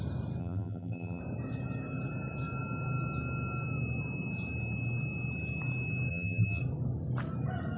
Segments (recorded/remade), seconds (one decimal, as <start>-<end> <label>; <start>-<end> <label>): 0.0-0.4 recorded; 0.4-1.2 remade; 1.2-6.1 recorded; 6.1-6.6 remade; 6.6-7.8 recorded